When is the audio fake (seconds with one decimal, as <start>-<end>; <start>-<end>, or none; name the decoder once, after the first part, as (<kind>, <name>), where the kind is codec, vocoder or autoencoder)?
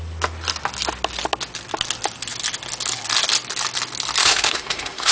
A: 4.2-5.1 (autoencoder, DAC-VAE)